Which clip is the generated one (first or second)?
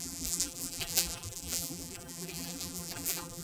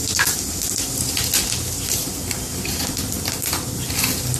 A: first